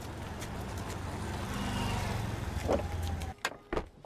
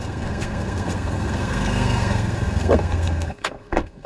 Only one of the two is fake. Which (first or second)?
second